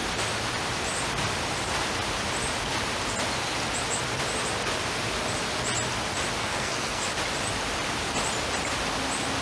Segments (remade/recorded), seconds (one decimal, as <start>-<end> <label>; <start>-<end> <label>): 0.0-6.4 recorded; 6.4-7.1 remade; 7.1-9.4 recorded